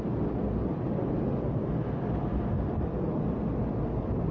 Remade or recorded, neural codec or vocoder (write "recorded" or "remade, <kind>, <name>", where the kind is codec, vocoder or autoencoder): recorded